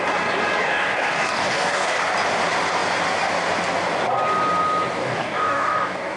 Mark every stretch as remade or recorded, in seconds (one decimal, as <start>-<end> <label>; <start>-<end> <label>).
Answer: 0.0-0.6 recorded; 0.6-2.0 remade; 2.0-5.0 recorded; 5.0-6.2 remade